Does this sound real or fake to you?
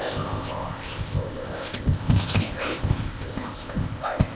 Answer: fake